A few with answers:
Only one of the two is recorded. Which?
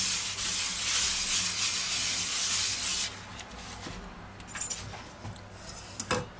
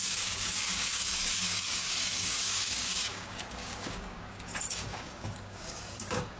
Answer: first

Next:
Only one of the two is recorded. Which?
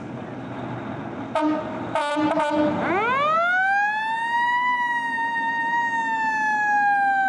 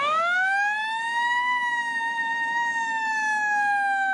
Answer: first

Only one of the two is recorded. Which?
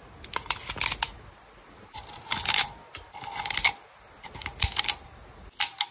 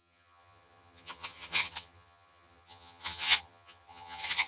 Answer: first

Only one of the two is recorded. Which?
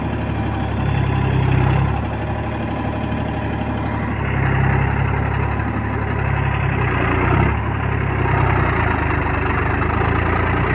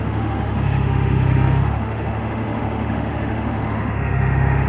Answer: first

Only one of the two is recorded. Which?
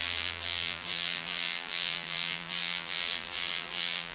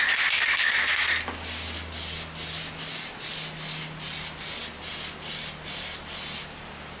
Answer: second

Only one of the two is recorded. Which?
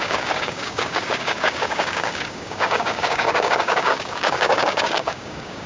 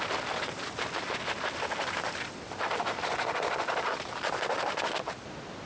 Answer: second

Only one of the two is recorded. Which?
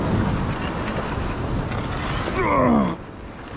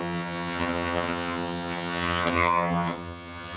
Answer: first